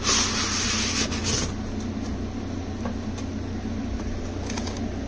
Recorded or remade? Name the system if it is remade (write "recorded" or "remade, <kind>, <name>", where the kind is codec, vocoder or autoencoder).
recorded